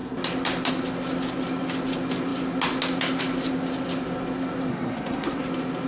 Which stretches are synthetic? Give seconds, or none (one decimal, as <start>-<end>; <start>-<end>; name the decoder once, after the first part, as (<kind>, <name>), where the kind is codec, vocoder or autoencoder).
4.7-5.4 (codec, SNAC)